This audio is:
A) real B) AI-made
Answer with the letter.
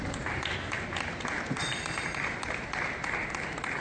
A